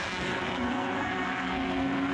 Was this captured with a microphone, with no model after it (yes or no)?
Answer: no